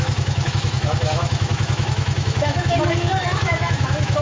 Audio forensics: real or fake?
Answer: fake